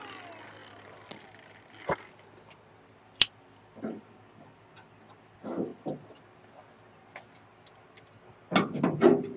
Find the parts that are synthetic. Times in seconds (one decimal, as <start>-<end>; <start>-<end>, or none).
none